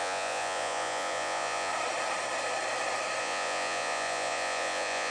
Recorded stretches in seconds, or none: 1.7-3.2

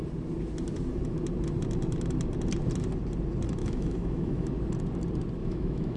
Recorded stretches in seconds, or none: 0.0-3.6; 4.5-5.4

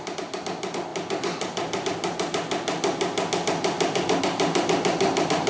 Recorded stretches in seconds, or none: 0.0-5.5

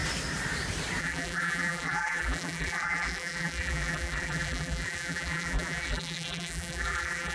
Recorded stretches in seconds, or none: 0.0-1.0